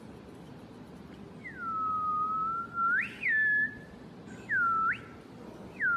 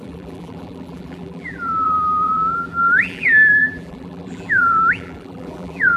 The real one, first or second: first